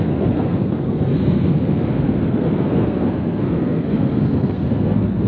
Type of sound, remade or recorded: remade